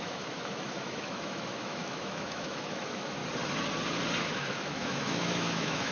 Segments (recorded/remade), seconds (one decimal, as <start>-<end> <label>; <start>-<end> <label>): 0.0-3.2 remade; 3.2-4.2 recorded; 4.2-5.9 remade